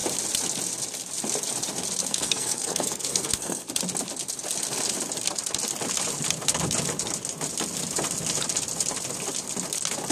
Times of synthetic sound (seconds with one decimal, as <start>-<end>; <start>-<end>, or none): 2.0-3.7